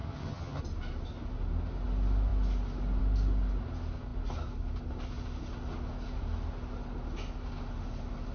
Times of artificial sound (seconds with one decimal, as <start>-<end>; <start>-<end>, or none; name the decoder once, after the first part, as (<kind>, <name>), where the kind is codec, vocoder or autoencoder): 0.0-0.6 (vocoder, HiFi-GAN)